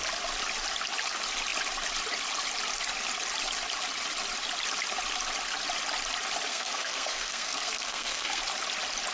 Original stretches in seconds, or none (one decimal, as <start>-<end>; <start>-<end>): 0.0-6.5; 8.4-9.1